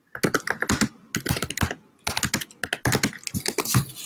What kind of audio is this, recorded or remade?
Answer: recorded